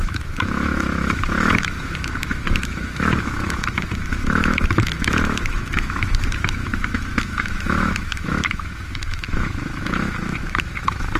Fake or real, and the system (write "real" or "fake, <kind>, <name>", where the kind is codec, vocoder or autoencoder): fake, autoencoder, DAC-VAE